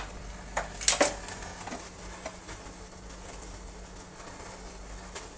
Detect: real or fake real